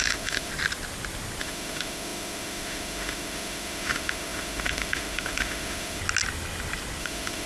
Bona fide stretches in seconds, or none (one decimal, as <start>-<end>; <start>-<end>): 0.5-1.4; 6.0-7.0